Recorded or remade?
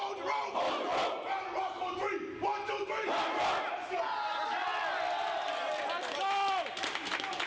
recorded